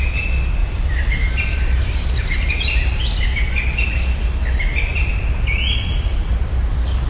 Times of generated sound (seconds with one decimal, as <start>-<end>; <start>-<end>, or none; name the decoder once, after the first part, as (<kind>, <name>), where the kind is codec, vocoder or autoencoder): 0.6-3.0 (vocoder, BigVGAN v2)